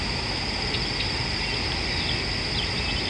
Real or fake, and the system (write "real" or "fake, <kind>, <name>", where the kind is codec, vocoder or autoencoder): real